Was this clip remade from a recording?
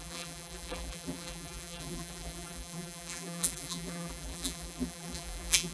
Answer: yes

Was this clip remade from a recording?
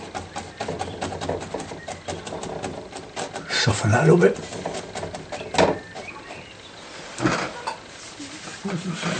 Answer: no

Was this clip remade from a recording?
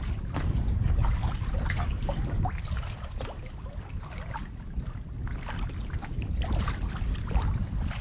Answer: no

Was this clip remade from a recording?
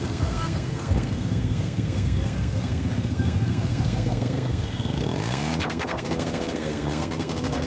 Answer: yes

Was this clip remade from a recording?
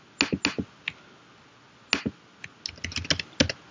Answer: no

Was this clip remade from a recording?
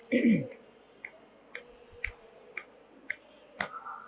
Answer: no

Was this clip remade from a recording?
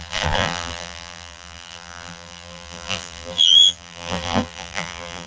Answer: yes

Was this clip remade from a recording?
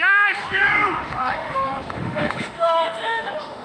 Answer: yes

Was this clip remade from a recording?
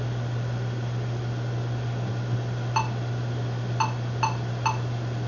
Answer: no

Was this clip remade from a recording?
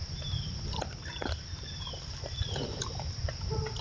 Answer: no